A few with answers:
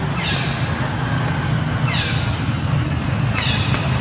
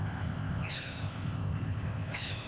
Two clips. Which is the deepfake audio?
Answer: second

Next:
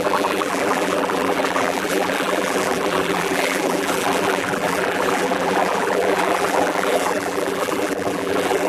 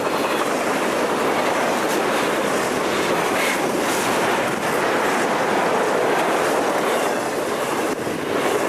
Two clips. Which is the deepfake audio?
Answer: first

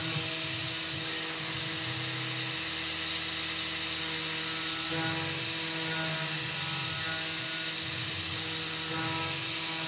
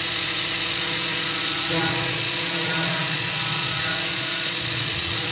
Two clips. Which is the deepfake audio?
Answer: second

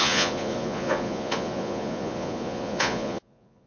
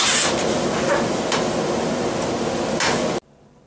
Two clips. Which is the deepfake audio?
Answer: first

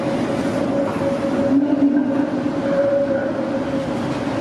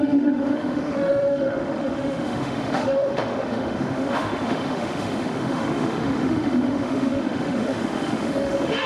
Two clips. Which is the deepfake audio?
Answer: second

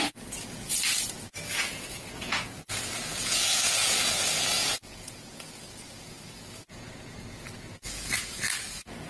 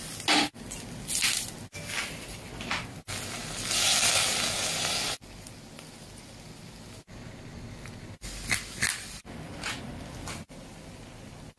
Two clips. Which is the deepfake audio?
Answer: first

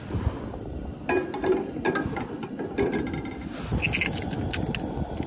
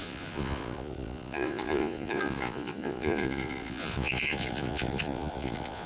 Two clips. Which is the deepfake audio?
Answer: second